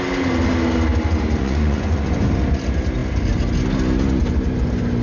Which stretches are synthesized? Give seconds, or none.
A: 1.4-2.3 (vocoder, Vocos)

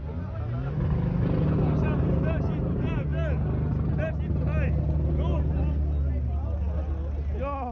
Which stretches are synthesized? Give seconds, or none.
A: none